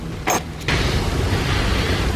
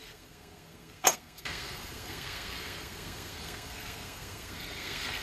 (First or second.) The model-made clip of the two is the second